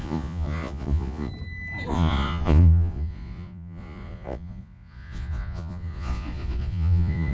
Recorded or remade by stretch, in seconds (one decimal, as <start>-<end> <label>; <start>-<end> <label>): 0.0-1.3 remade; 1.3-1.9 recorded; 1.9-7.3 remade